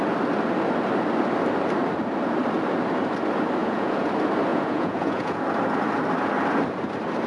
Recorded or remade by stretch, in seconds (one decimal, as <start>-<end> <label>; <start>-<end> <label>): 0.0-3.6 recorded; 3.6-4.1 remade; 4.1-4.5 recorded; 4.5-5.4 remade; 5.4-7.3 recorded